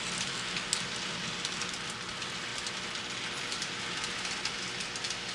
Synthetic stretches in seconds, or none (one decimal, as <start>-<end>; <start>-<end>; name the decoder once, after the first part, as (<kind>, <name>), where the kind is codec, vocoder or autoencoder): none